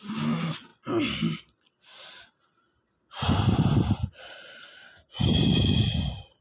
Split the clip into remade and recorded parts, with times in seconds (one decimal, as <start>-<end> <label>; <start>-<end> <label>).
0.0-6.4 recorded